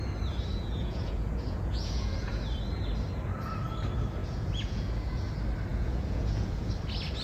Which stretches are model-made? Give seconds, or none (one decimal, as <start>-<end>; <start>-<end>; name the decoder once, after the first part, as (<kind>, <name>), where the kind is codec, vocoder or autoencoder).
0.5-2.4 (vocoder, Vocos); 4.2-5.3; 5.7-6.7